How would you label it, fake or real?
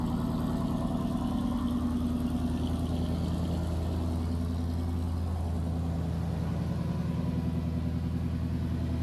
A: real